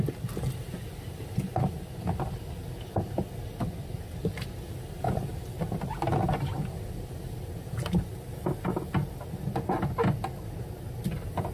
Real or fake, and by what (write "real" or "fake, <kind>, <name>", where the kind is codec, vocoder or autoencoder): real